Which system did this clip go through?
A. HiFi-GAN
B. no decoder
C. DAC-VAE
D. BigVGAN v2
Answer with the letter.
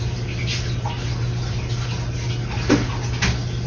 B